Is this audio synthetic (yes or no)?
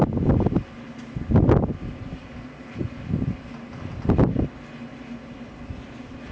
no